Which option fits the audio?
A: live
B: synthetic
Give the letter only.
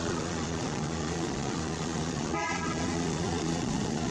B